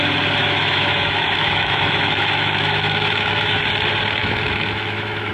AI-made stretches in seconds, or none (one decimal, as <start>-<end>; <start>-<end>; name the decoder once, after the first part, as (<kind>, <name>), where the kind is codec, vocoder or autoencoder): 0.4-3.6 (autoencoder, DAC-VAE); 4.2-5.3